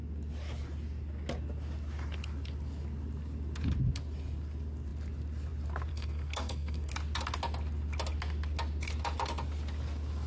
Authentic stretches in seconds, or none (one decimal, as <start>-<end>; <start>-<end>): 0.0-5.9; 6.9-10.3